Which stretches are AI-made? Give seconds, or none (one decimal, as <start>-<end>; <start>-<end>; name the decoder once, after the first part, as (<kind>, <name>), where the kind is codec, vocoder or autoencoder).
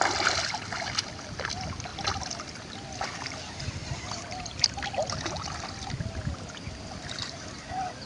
0.0-1.9 (vocoder, BigVGAN v2); 6.0-8.1